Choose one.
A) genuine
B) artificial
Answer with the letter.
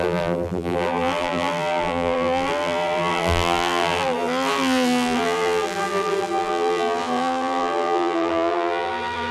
B